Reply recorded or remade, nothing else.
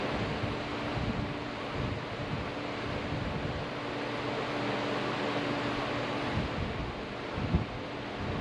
recorded